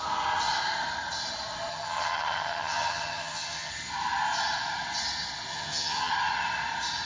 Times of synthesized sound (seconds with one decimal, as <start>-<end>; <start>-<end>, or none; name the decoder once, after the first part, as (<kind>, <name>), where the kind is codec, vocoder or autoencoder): 1.7-3.7 (vocoder, HiFi-GAN); 5.5-6.1